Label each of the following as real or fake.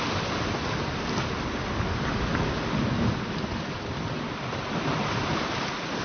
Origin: real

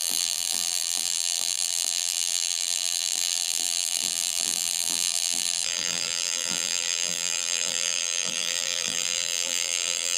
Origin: fake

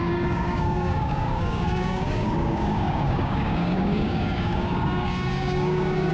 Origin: fake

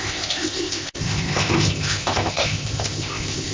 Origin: fake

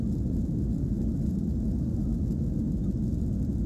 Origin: real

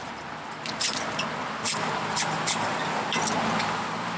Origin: real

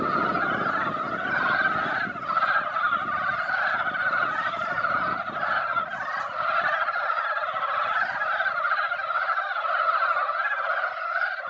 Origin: real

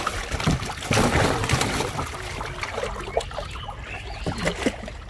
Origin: real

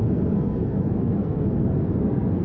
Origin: fake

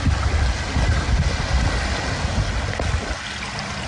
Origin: real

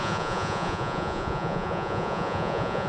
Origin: fake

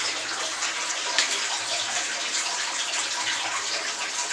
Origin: real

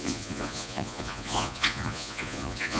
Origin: fake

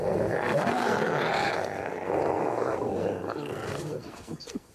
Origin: fake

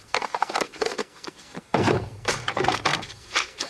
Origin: fake